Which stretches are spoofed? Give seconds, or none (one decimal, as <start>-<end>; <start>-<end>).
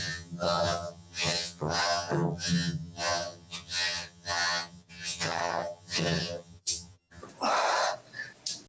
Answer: 0.0-7.2